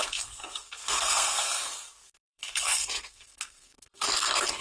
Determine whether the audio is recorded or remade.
remade